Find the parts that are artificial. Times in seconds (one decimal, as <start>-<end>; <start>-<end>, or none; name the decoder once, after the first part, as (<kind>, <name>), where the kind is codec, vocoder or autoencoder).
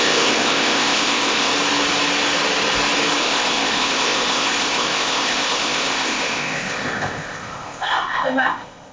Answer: 0.0-1.5 (codec, ZipCodec); 3.2-8.9